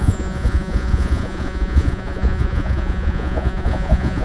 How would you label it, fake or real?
fake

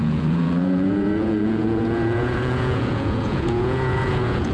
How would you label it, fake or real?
fake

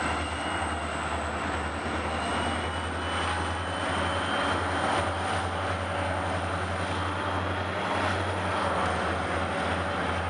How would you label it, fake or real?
real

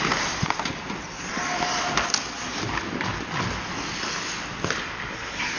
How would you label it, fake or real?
real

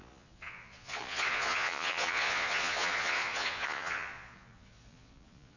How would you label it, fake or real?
fake